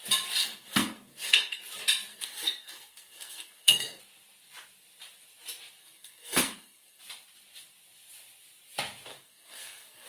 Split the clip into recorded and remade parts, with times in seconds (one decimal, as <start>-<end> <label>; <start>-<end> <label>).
0.0-0.4 recorded; 0.4-1.6 remade; 1.6-2.1 recorded; 2.1-4.0 remade; 4.0-5.8 recorded; 5.8-7.0 remade; 7.0-9.1 recorded; 9.1-10.1 remade